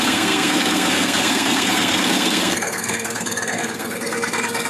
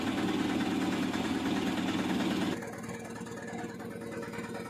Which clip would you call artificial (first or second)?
first